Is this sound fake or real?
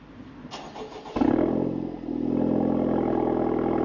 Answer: real